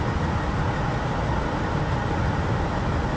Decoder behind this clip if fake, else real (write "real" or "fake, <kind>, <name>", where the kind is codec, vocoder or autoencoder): real